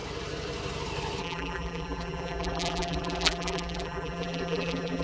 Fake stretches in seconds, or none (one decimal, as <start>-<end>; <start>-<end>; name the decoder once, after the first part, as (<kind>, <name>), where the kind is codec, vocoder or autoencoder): 1.2-5.0 (vocoder, BigVGAN v2)